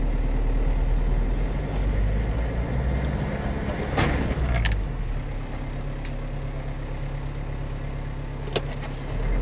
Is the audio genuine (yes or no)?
yes